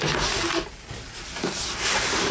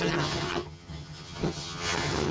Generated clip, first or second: second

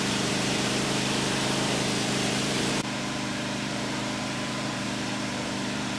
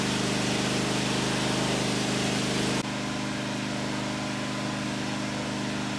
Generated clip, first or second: first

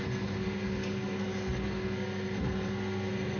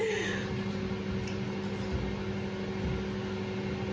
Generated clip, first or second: first